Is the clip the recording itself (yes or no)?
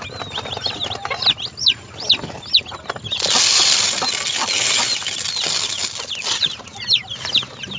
yes